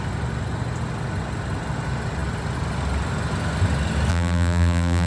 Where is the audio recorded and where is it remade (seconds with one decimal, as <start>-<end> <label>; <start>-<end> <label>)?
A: 0.0-4.1 recorded; 4.1-5.1 remade